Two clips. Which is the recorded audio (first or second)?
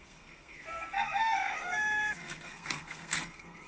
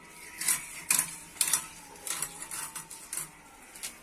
second